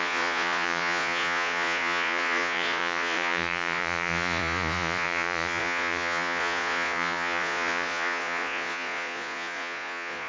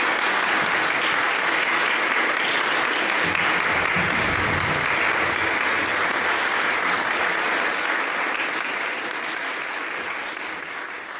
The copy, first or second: first